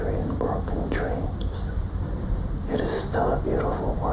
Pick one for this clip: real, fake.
real